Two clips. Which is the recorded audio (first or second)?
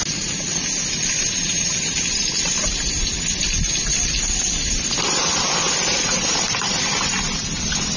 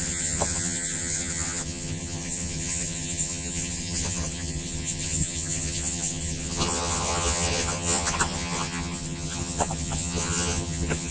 first